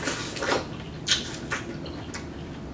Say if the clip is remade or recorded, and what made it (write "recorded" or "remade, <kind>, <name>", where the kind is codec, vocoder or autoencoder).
recorded